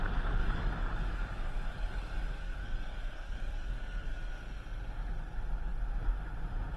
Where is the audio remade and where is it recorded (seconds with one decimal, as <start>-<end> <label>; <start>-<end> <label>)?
0.0-0.4 recorded; 0.4-4.3 remade; 4.3-6.8 recorded